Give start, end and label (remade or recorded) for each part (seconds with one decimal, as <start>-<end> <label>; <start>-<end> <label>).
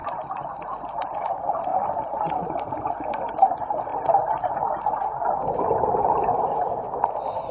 0.0-1.0 recorded; 1.0-1.7 remade; 1.7-2.7 recorded; 2.7-3.9 remade; 3.9-6.9 recorded; 6.9-7.5 remade